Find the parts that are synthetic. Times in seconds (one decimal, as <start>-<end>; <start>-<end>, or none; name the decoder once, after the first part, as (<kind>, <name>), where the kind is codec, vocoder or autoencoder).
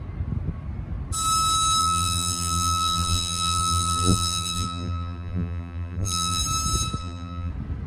1.8-6.4 (vocoder, BigVGAN v2); 7.0-7.5